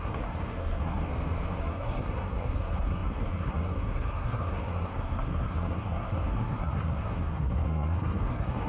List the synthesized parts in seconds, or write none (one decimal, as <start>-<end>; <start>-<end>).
0.0-1.1; 1.6-8.7